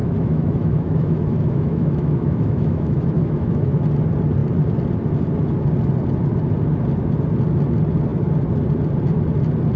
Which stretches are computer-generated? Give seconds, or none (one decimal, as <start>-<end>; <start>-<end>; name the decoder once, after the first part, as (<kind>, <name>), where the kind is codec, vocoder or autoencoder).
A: 0.0-3.8 (autoencoder, DAC-VAE)